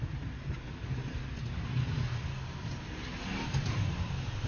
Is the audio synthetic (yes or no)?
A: no